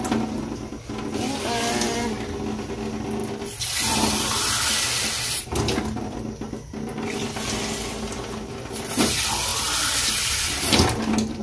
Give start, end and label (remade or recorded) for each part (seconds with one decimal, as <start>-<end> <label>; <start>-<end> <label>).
0.0-11.4 recorded